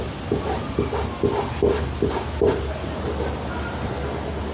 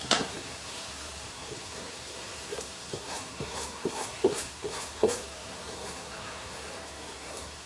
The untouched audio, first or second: first